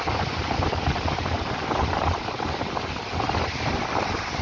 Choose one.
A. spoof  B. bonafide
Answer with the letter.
B